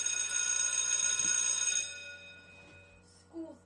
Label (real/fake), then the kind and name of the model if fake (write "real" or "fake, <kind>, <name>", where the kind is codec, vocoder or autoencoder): real